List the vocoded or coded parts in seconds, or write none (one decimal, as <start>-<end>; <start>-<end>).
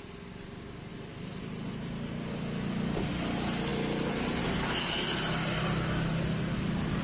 0.9-3.1